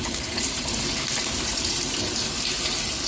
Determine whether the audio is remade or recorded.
remade